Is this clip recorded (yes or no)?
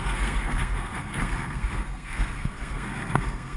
no